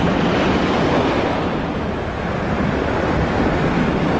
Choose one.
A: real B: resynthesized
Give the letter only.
A